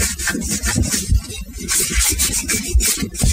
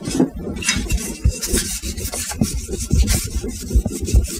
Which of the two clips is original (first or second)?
first